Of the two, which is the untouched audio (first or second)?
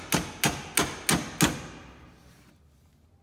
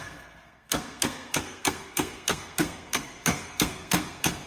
first